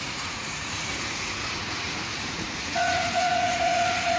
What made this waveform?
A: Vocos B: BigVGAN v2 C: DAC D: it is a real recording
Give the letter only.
A